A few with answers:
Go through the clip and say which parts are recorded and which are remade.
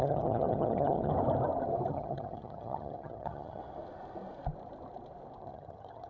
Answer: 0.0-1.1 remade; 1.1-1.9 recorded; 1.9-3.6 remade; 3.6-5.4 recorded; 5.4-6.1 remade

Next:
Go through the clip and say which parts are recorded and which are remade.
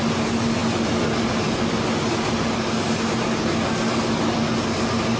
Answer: 0.0-5.2 recorded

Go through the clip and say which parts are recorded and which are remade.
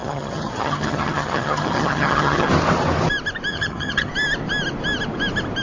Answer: 0.0-2.5 remade; 2.5-3.5 recorded; 3.5-4.1 remade; 4.1-5.6 recorded